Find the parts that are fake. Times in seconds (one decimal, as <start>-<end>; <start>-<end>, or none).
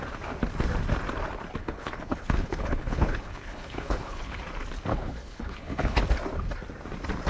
1.6-4.4; 4.9-6.0